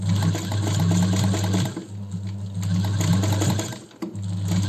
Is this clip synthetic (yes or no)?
no